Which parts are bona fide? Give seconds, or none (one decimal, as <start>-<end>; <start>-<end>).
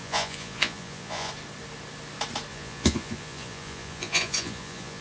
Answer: 1.3-2.5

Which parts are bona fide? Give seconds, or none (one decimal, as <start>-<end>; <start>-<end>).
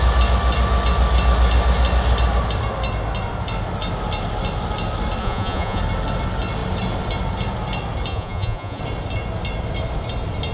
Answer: 0.0-5.2; 5.8-8.1; 8.8-10.5